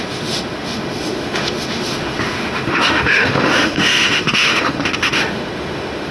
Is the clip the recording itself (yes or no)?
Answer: no